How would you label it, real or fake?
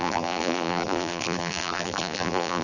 fake